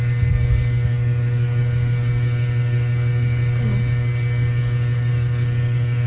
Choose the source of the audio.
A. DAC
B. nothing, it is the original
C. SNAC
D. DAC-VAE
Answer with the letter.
A